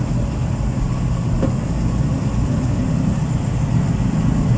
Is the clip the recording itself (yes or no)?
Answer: yes